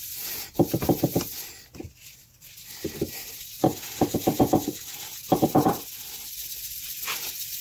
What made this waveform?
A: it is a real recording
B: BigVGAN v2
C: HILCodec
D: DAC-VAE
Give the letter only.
A